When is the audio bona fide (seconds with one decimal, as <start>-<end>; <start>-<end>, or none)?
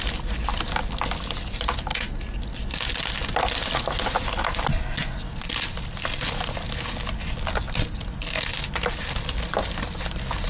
0.0-10.5